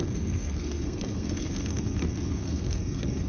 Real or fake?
fake